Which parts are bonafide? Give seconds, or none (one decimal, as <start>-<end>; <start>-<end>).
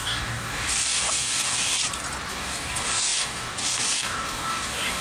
1.8-2.3